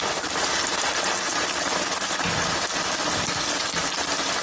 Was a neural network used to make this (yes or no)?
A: no